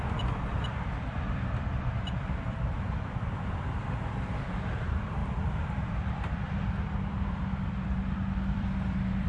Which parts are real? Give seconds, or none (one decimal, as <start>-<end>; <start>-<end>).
5.2-5.9